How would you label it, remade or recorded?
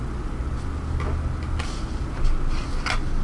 recorded